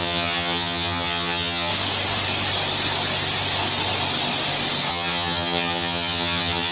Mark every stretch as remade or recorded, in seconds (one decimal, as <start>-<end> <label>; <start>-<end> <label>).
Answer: 0.0-1.7 remade; 1.7-4.9 recorded; 4.9-6.7 remade